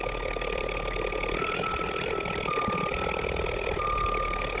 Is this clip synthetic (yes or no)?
no